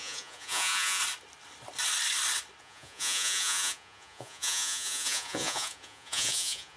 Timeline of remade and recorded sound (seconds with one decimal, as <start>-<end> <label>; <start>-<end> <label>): 0.0-1.0 remade; 1.0-2.6 recorded; 2.6-6.8 remade